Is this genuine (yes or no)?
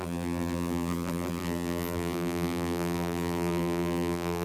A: no